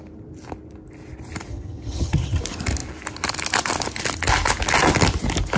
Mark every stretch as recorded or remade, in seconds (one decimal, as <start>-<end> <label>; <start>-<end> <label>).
0.0-1.5 recorded; 1.5-2.4 remade; 2.4-5.6 recorded